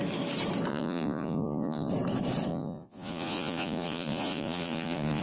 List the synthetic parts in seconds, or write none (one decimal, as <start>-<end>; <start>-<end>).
0.7-1.9; 2.5-5.2